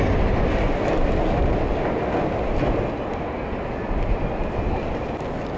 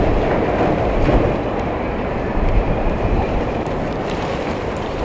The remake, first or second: second